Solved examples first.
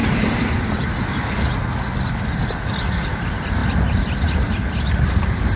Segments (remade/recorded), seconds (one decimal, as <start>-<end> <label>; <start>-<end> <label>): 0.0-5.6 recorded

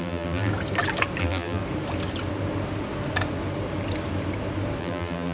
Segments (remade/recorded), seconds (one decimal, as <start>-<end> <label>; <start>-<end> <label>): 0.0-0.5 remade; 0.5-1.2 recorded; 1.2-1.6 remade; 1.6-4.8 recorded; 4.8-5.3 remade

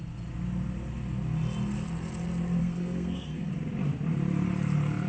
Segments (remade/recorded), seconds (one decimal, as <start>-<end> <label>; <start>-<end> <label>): 0.0-2.6 recorded; 2.6-3.5 remade; 3.5-5.1 recorded

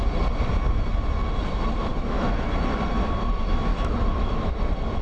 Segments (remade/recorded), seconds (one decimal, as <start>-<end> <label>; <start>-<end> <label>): 0.0-1.9 recorded; 1.9-2.5 remade; 2.5-3.7 recorded; 3.7-4.5 remade; 4.5-5.0 recorded

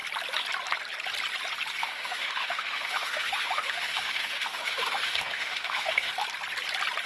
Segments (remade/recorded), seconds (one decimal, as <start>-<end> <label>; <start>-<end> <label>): 0.0-1.8 recorded; 1.8-6.1 remade; 6.1-7.1 recorded

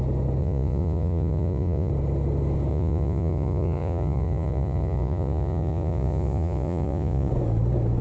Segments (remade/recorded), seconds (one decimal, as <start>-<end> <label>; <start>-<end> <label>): 0.0-0.4 recorded; 0.4-1.9 remade; 1.9-2.7 recorded; 2.7-7.3 remade; 7.3-8.0 recorded

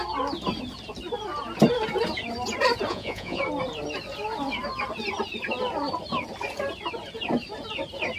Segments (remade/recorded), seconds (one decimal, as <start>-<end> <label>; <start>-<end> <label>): 0.0-2.9 recorded; 2.9-3.4 remade; 3.4-8.2 recorded

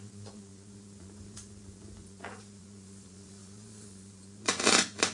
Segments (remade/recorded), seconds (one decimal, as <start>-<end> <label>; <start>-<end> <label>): 0.0-5.1 remade